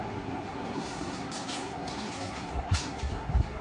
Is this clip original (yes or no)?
no